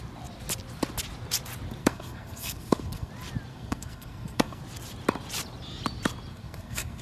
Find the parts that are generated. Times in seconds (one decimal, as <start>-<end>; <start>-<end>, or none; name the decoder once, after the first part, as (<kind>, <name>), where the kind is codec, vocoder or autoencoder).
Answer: 1.8-3.1 (codec, SNAC); 3.5-4.6; 6.3-7.0